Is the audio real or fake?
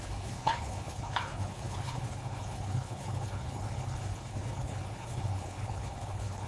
fake